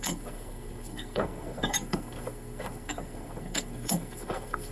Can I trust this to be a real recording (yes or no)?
no